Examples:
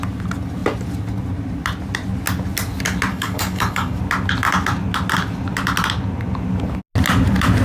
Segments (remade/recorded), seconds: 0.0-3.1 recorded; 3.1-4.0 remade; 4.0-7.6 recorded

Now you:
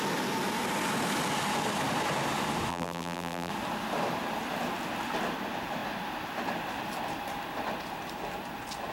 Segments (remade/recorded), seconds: 0.0-2.7 recorded; 2.7-3.5 remade; 3.5-8.9 recorded

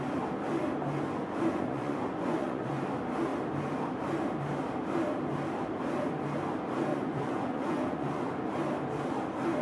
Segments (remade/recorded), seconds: 0.0-1.2 recorded; 1.2-2.8 remade; 2.8-6.9 recorded; 6.9-8.3 remade; 8.3-9.6 recorded

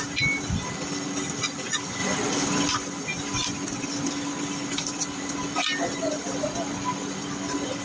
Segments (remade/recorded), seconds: 0.0-7.8 recorded

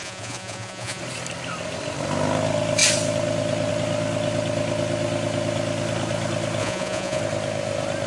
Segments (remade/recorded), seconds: 0.0-1.0 remade; 1.0-6.6 recorded; 6.6-7.2 remade; 7.2-8.1 recorded

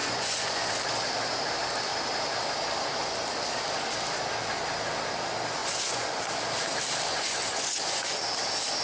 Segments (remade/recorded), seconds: 0.0-0.7 remade; 0.7-5.6 recorded; 5.6-6.2 remade; 6.2-7.1 recorded; 7.1-8.1 remade; 8.1-8.8 recorded